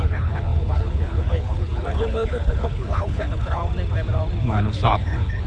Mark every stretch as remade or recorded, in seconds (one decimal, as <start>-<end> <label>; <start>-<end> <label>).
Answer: 0.0-3.6 remade; 3.6-4.4 recorded; 4.4-5.5 remade